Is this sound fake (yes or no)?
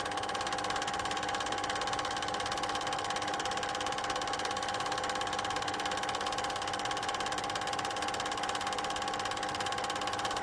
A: no